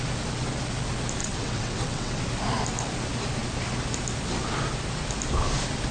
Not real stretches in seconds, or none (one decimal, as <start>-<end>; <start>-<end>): 1.2-2.2